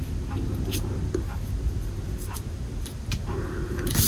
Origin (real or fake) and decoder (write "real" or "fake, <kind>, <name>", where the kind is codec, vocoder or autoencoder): real